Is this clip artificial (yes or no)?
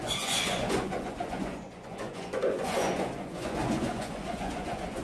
yes